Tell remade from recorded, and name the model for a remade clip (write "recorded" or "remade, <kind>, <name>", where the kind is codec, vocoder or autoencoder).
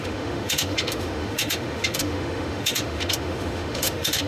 remade, autoencoder, DAC-VAE